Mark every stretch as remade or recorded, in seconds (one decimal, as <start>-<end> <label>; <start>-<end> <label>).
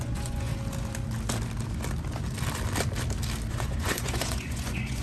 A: 0.0-0.5 remade; 0.5-3.5 recorded; 3.5-5.0 remade